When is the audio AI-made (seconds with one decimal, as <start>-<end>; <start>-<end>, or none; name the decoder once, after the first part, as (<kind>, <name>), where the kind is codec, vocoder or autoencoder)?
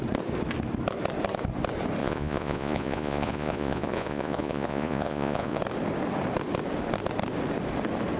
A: 2.0-5.6 (vocoder, Vocos)